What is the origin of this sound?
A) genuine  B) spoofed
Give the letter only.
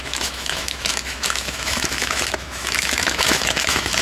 B